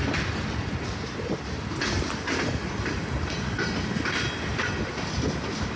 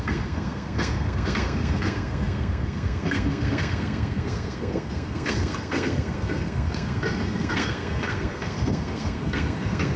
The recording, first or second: first